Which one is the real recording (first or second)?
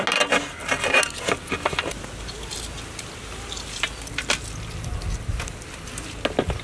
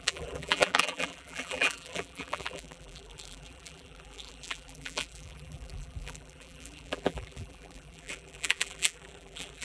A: first